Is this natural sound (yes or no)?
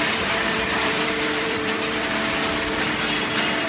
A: no